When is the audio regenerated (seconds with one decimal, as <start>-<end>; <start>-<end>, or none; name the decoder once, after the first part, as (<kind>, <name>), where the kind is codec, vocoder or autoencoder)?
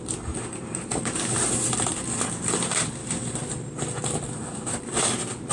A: 0.0-5.5 (vocoder, BigVGAN v2)